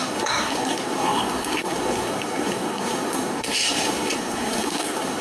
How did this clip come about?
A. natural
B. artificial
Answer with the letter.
B